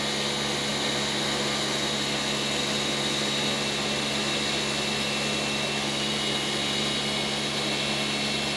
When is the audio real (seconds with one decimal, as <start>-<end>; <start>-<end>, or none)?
0.0-8.6